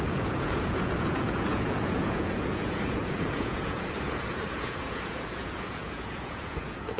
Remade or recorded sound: remade